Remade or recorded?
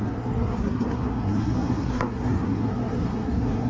remade